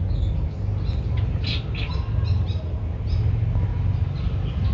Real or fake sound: real